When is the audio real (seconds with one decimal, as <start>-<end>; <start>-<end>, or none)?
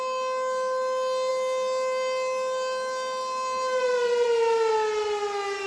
0.0-1.3; 4.7-5.7